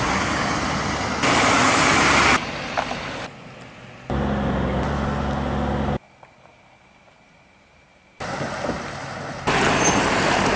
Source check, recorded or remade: recorded